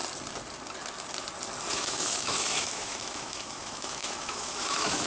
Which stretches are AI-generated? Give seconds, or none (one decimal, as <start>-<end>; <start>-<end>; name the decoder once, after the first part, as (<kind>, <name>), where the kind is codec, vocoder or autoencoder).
1.7-5.1 (autoencoder, DAC-VAE)